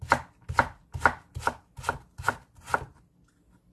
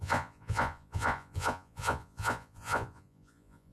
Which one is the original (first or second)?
first